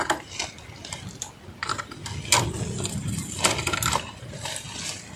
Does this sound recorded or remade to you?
recorded